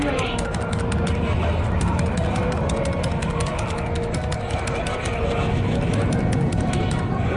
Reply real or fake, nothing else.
real